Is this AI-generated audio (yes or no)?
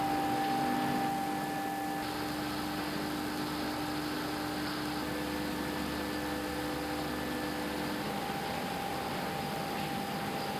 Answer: no